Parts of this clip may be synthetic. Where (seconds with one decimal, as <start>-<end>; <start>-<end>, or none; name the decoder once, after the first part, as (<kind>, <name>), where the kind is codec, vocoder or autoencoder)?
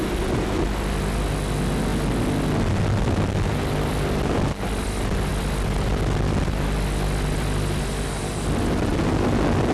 none